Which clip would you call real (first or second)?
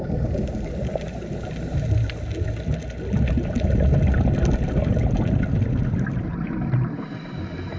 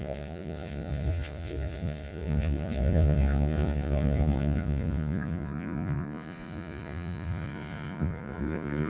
first